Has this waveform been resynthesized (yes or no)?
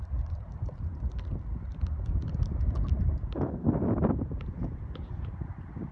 yes